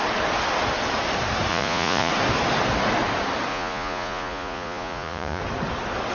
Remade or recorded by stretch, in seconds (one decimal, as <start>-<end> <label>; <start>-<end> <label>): 0.0-1.5 recorded; 1.5-2.1 remade; 2.1-3.5 recorded; 3.5-5.4 remade; 5.4-6.1 recorded